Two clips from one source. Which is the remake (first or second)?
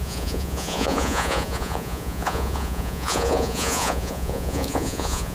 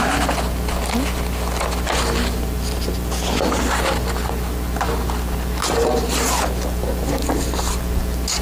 first